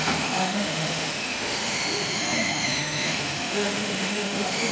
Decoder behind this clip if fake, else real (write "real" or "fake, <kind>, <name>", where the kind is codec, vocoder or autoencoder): fake, autoencoder, DAC-VAE